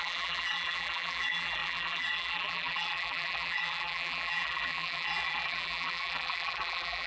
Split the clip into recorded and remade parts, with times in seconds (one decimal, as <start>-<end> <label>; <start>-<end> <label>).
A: 0.0-7.1 remade